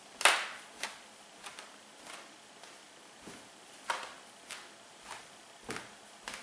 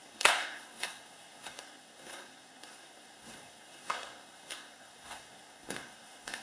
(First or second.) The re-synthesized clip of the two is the second